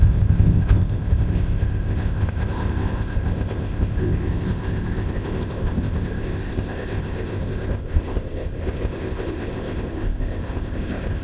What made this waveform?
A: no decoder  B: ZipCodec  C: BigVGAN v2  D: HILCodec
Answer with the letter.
B